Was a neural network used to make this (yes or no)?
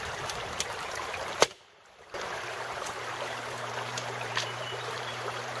yes